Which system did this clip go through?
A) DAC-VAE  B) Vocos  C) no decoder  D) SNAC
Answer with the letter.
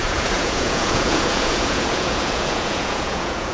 B